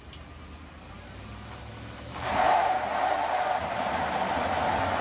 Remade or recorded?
recorded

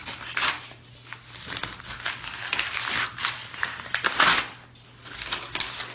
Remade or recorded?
recorded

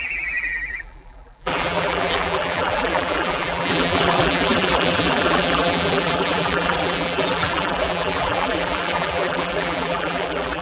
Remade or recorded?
remade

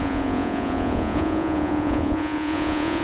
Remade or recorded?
remade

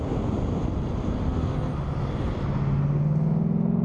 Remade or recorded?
recorded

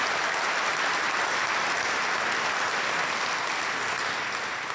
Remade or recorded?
recorded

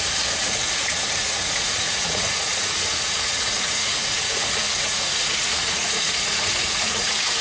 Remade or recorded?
remade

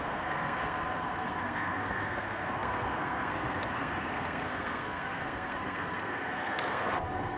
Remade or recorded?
remade